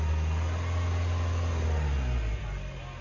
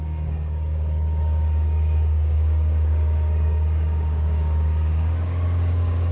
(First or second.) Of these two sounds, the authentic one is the first